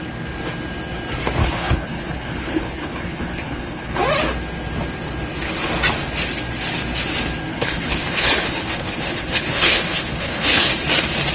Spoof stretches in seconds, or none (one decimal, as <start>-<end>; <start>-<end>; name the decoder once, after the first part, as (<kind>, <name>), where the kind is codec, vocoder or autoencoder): 1.4-4.0 (codec, HILCodec); 7.5-10.7